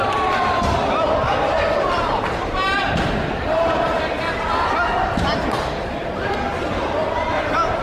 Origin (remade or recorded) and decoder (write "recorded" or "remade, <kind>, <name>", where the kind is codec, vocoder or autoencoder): remade, vocoder, BigVGAN v2